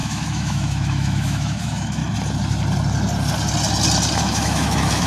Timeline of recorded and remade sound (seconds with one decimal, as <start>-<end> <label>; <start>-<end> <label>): 0.0-2.0 remade; 2.0-4.2 recorded; 4.2-5.1 remade